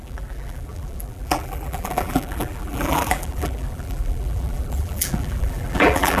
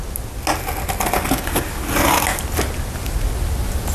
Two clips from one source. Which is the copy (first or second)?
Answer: first